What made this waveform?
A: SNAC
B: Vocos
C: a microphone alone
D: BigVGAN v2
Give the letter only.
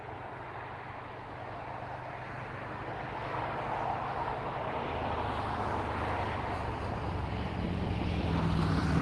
C